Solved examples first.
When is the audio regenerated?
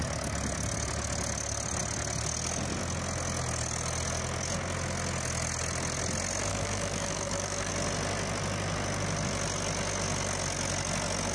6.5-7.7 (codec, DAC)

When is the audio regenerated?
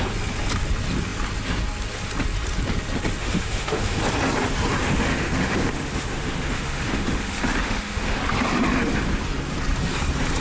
3.2-4.0 (autoencoder, DAC-VAE); 4.8-8.2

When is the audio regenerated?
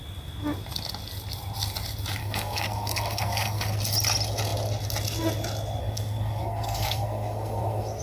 2.2-3.8 (codec, SNAC); 5.8-8.0